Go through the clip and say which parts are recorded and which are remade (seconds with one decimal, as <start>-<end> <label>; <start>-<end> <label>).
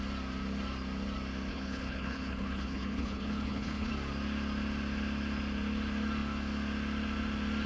0.0-1.5 recorded; 1.5-3.9 remade; 3.9-7.7 recorded